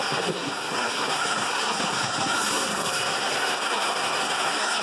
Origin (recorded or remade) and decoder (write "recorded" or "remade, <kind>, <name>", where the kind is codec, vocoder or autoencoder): remade, codec, SNAC